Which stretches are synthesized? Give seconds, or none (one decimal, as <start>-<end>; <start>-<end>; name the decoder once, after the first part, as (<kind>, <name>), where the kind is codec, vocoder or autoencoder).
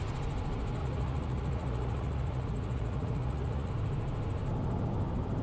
0.8-3.7 (vocoder, Vocos)